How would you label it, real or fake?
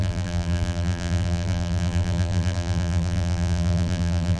fake